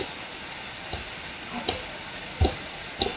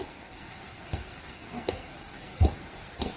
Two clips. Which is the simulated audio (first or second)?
second